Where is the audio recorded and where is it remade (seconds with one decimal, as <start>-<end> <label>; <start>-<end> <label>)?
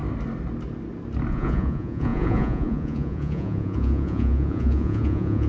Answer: 0.0-1.3 recorded; 1.3-5.5 remade